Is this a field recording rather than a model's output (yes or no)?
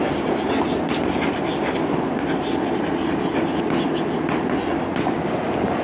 yes